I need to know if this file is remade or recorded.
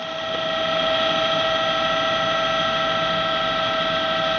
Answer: recorded